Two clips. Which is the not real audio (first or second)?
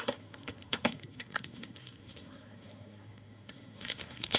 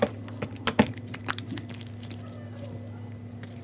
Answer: first